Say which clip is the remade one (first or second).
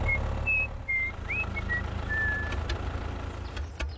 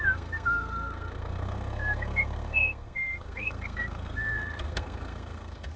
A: second